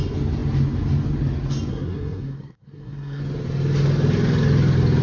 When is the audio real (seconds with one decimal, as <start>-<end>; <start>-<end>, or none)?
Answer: 0.0-1.7; 3.2-5.0